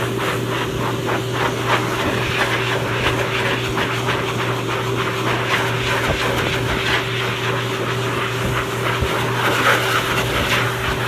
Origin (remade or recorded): recorded